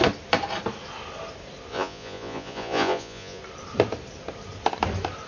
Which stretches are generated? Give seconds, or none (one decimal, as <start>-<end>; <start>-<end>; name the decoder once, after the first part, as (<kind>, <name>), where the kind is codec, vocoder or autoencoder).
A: 1.7-3.4 (vocoder, Vocos)